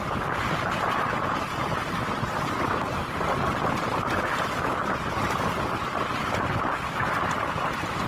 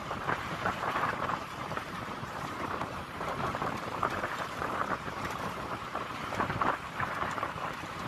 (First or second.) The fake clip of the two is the second